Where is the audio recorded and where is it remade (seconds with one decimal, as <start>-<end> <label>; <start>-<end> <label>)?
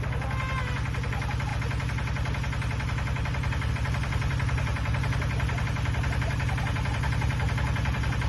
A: 0.0-8.3 recorded